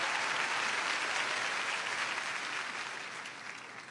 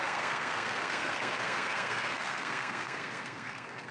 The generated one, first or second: second